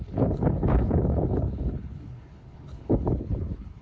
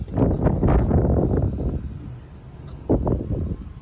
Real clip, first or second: second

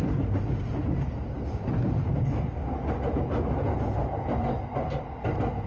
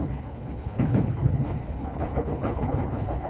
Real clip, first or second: first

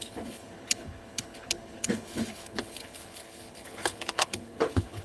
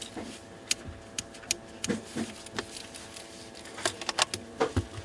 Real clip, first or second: second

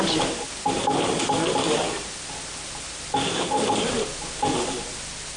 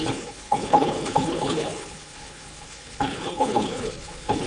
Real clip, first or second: first